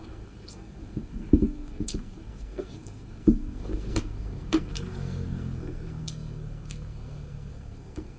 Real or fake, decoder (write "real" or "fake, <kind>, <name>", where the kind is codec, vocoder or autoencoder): fake, codec, SNAC